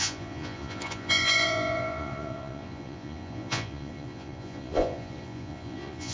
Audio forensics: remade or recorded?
remade